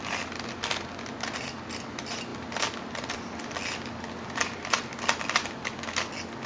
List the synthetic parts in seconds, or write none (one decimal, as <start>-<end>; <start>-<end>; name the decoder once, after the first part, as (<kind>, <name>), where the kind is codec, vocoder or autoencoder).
none